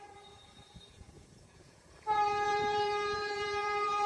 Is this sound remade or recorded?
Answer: remade